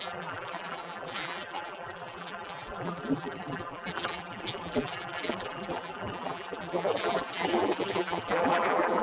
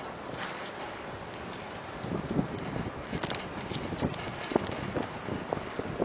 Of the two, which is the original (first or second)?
second